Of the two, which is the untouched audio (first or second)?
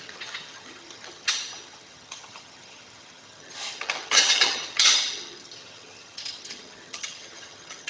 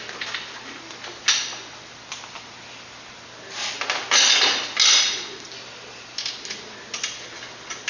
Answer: second